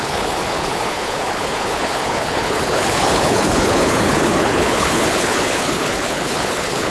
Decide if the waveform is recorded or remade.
remade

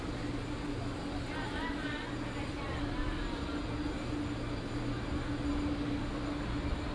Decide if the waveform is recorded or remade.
recorded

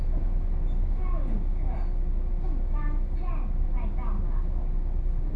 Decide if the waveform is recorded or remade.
recorded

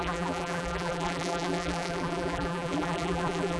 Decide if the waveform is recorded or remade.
remade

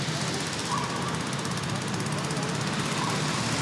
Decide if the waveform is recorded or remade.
recorded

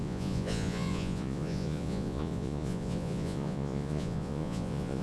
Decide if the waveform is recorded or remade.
remade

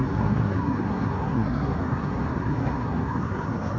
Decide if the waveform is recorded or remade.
remade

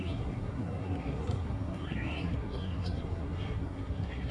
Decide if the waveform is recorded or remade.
remade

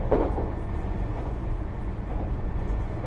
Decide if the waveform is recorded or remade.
remade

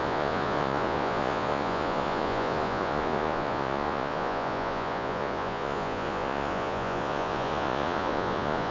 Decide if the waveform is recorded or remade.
remade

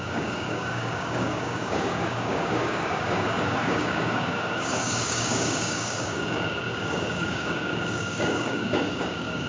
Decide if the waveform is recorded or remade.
remade